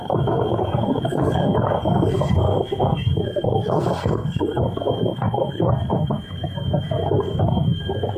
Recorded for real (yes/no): no